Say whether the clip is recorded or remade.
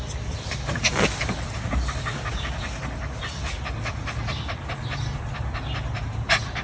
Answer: recorded